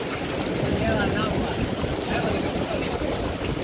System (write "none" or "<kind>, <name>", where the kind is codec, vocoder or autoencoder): vocoder, BigVGAN v2